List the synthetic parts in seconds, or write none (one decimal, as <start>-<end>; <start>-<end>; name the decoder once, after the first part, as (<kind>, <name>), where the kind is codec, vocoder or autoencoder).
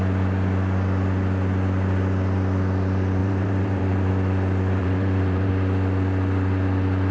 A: 3.2-4.1 (vocoder, BigVGAN v2); 4.8-5.5